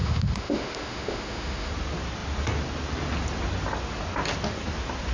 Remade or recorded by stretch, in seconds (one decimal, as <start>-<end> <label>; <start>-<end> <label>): 0.0-1.7 remade; 1.7-5.1 recorded

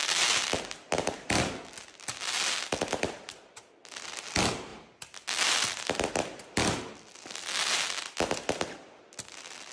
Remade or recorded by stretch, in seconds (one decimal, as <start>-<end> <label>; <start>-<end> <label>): 0.0-9.7 recorded

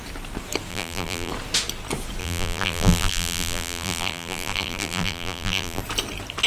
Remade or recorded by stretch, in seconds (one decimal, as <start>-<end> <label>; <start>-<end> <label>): 0.0-0.7 recorded; 0.7-1.3 remade; 1.3-2.2 recorded; 2.2-5.8 remade; 5.8-6.5 recorded

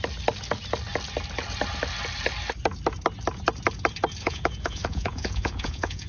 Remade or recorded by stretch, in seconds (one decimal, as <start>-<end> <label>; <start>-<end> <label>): 0.0-4.2 recorded; 4.2-6.1 remade

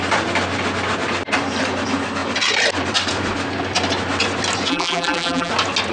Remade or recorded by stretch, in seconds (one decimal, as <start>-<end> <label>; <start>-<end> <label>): 0.0-4.7 recorded; 4.7-5.5 remade; 5.5-5.9 recorded

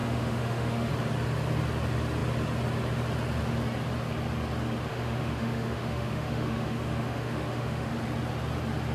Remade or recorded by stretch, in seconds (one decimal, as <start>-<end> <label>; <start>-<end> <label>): 0.0-0.9 remade; 0.9-4.9 recorded; 4.9-7.9 remade; 7.9-8.9 recorded